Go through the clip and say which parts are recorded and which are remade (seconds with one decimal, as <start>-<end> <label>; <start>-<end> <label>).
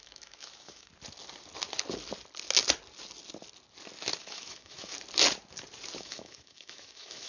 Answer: 0.0-0.9 remade; 0.9-4.2 recorded; 4.2-4.9 remade; 4.9-6.0 recorded; 6.0-7.3 remade